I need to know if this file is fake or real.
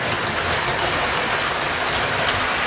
real